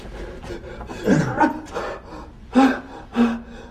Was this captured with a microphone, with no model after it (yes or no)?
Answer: yes